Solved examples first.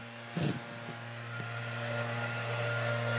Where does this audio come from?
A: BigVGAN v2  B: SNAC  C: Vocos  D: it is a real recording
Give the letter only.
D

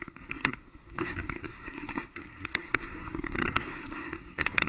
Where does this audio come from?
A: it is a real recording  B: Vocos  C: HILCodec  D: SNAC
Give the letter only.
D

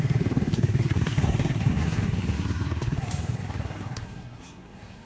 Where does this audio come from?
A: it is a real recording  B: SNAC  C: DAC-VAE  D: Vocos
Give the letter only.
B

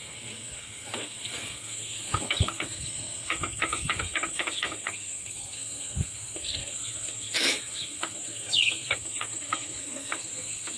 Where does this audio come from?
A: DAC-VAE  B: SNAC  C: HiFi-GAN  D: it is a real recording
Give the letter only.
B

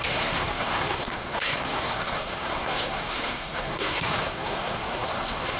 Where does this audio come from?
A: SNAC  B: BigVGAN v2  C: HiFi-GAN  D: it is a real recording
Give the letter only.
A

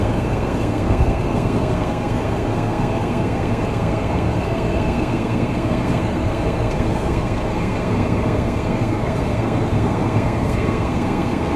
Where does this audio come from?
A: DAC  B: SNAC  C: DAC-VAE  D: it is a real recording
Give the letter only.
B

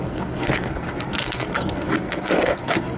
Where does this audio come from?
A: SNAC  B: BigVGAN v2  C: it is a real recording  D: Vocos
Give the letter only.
A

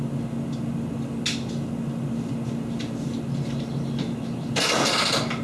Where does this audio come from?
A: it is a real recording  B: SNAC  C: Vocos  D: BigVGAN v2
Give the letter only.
A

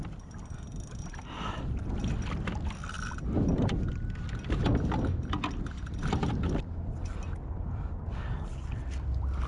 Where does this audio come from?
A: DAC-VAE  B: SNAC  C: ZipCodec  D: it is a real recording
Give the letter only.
D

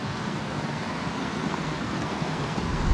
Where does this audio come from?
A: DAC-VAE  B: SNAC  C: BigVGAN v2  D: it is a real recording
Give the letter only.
B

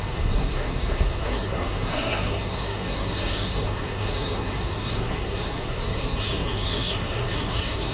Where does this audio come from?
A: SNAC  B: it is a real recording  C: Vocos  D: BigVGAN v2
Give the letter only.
A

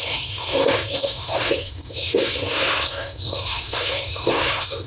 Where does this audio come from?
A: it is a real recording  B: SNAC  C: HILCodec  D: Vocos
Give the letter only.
B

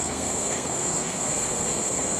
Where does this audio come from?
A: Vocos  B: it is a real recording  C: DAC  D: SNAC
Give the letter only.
D